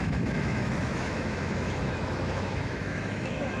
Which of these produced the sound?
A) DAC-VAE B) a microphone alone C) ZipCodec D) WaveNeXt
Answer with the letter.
A